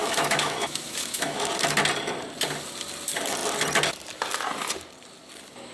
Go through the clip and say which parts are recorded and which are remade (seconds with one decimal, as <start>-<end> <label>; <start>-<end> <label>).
0.0-1.5 remade; 1.5-5.7 recorded